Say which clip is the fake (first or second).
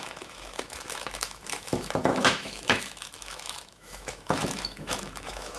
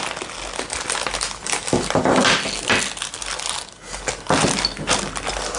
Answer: first